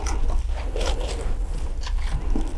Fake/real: real